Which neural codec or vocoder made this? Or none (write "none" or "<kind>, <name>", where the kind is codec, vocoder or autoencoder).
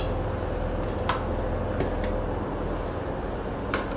none